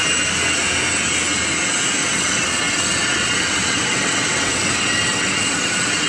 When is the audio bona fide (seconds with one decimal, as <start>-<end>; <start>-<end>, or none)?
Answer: 0.0-2.0